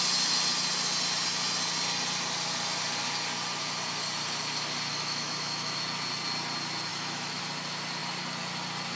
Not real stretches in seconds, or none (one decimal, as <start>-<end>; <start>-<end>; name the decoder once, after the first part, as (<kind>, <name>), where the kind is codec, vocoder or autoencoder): 4.9-5.8 (autoencoder, DAC-VAE); 6.9-7.4